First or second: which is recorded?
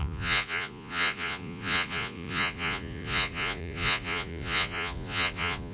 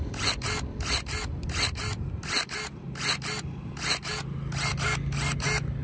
second